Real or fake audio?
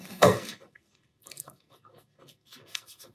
fake